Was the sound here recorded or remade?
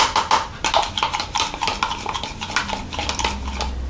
recorded